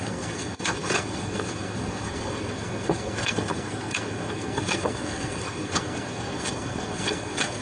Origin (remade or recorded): remade